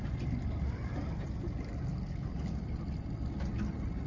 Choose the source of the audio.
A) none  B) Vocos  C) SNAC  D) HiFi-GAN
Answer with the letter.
A